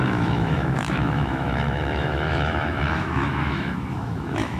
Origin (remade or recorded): remade